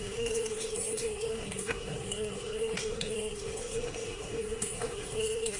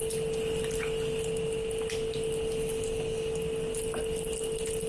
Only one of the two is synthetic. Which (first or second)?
first